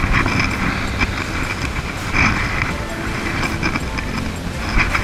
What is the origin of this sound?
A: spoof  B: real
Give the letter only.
B